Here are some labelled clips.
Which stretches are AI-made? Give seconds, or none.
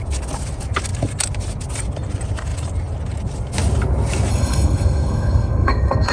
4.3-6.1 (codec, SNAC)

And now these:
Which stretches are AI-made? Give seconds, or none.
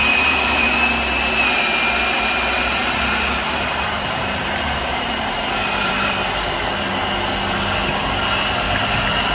0.0-0.7 (vocoder, BigVGAN v2); 2.8-6.9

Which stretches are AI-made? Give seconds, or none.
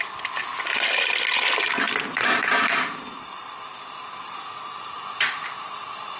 0.4-1.9 (vocoder, BigVGAN v2)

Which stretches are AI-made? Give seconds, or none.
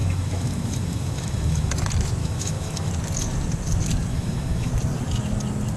0.0-1.7 (autoencoder, DAC-VAE); 2.2-2.9; 4.1-4.7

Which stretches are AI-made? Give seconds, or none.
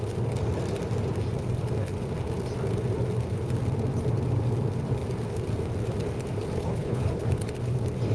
6.6-7.3 (codec, HILCodec)